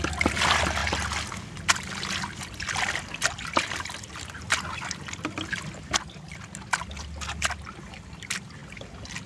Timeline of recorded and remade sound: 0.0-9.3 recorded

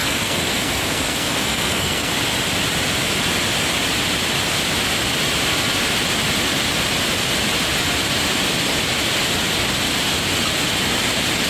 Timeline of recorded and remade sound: 0.0-2.1 remade; 2.1-11.5 recorded

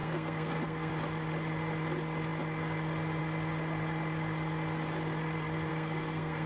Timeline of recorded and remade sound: 0.0-0.9 remade; 0.9-5.7 recorded; 5.7-6.5 remade

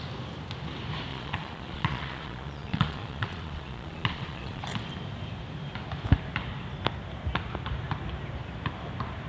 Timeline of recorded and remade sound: 0.0-1.1 recorded; 1.1-4.6 remade; 4.6-9.3 recorded

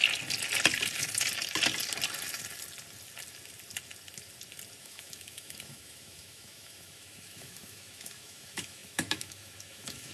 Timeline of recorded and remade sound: 0.0-4.8 recorded; 4.8-10.1 remade